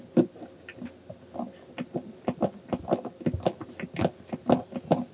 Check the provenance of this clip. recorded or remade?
recorded